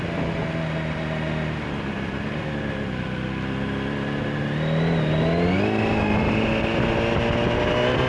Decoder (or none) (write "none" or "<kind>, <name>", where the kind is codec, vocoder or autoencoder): none